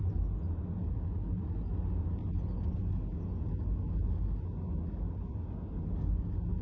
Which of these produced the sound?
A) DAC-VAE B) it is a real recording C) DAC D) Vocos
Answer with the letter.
B